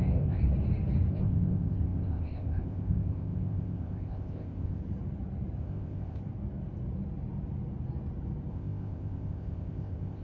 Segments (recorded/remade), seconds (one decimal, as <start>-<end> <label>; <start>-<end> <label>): 0.0-0.4 remade; 0.4-1.1 recorded; 1.1-4.8 remade; 4.8-5.6 recorded; 5.6-6.2 remade; 6.2-8.5 recorded; 8.5-10.2 remade